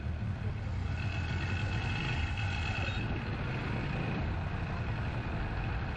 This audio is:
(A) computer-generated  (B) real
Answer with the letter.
B